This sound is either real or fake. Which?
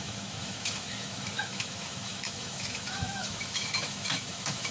fake